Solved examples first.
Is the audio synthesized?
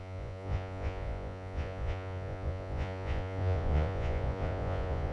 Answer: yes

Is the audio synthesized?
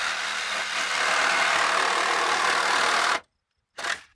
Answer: no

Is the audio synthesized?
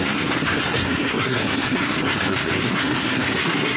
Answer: yes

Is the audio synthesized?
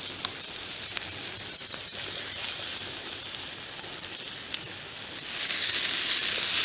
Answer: no